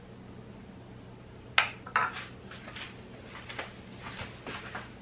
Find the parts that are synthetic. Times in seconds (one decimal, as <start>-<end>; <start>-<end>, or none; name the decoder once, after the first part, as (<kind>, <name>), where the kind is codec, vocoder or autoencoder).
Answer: none

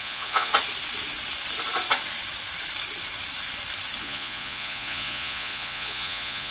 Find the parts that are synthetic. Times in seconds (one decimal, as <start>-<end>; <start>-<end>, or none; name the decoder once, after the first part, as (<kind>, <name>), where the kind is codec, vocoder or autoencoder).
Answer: 0.0-0.5 (vocoder, Vocos); 4.0-6.5

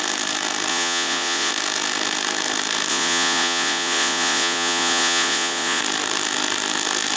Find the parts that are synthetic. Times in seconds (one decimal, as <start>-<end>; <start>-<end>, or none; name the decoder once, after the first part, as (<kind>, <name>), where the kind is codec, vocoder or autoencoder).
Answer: 0.7-1.5 (vocoder, Vocos); 2.9-5.8

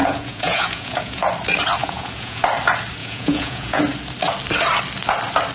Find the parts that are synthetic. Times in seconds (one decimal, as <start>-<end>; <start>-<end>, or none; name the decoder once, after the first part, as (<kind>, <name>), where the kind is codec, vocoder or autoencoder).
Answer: 0.0-1.3 (vocoder, Vocos); 1.8-2.4; 3.0-3.8

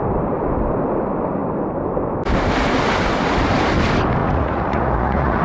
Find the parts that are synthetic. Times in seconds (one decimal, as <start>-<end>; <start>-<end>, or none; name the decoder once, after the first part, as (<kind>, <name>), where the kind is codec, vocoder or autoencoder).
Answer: 4.2-5.4 (vocoder, Vocos)

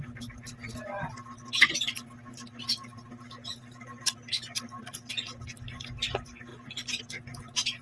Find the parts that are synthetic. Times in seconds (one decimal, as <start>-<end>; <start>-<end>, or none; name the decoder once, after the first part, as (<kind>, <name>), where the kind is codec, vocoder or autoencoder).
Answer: 6.5-7.0 (vocoder, Vocos)